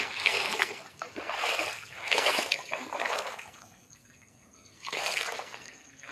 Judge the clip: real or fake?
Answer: fake